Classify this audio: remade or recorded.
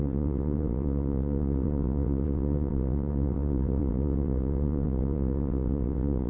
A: remade